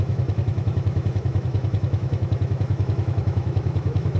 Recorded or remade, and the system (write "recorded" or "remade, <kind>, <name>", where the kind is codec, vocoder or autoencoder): remade, autoencoder, DAC-VAE